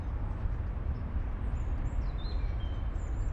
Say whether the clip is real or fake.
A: real